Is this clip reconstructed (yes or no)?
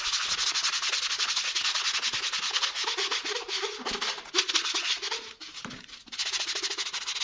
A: no